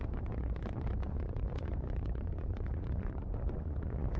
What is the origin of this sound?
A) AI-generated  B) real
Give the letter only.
A